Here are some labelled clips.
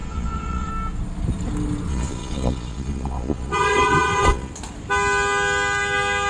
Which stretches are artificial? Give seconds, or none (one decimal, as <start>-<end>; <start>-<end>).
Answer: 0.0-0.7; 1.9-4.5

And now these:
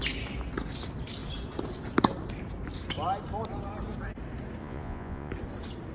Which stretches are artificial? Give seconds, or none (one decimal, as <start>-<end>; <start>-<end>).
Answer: 4.6-5.3

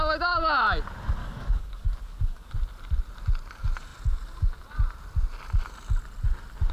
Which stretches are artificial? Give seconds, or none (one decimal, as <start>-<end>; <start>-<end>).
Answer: 1.2-2.5

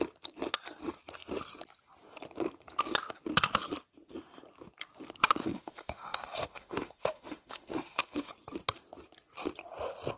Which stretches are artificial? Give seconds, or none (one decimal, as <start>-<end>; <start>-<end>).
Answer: 5.4-8.3

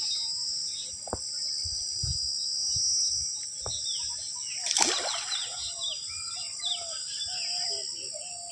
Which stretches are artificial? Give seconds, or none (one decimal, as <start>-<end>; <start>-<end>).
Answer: none

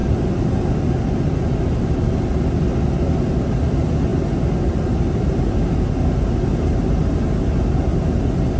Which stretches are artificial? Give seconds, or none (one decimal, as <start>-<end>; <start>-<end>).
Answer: none

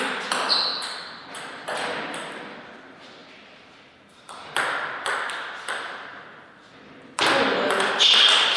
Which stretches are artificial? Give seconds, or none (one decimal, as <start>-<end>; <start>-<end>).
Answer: 0.0-8.6